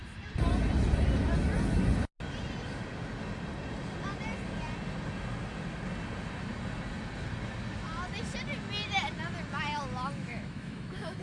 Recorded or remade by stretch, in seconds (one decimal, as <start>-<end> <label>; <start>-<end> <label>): 0.0-10.2 recorded; 10.2-11.2 remade

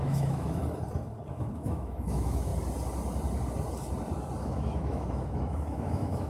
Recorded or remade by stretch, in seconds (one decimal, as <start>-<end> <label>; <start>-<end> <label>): 0.0-0.6 remade; 0.6-1.3 recorded; 1.3-2.5 remade; 2.5-4.4 recorded; 4.4-6.3 remade